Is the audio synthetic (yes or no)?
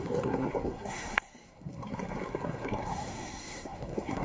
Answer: yes